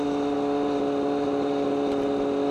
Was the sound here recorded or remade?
recorded